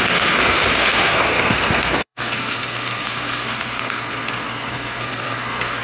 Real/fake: fake